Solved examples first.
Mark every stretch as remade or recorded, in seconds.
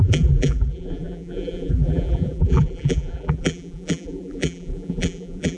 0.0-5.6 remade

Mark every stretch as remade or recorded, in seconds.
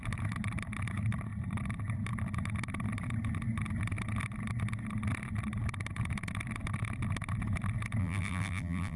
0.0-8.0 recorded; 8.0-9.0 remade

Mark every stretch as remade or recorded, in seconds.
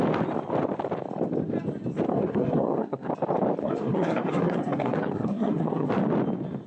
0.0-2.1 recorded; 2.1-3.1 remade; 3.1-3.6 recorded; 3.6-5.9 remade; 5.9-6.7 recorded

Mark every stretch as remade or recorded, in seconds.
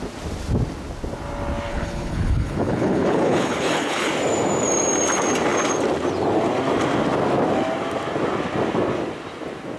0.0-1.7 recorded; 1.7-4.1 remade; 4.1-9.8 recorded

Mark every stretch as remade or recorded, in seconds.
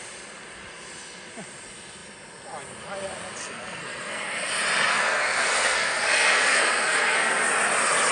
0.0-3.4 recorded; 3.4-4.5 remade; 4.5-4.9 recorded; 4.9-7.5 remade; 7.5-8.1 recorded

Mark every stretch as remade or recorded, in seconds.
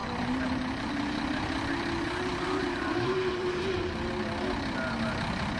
0.0-0.9 remade; 0.9-2.6 recorded; 2.6-4.1 remade; 4.1-5.6 recorded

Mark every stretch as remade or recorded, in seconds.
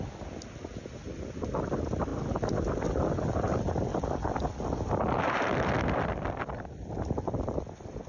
0.0-8.1 recorded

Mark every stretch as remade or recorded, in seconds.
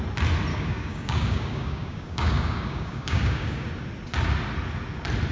0.0-0.5 recorded; 0.5-3.7 remade; 3.7-5.3 recorded